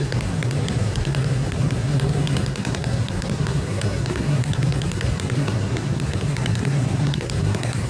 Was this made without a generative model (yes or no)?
no